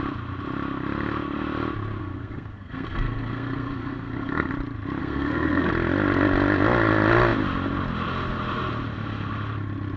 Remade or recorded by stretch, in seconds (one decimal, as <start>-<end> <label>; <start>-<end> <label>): 0.0-2.0 recorded; 2.0-4.5 remade; 4.5-5.0 recorded; 5.0-5.7 remade; 5.7-10.0 recorded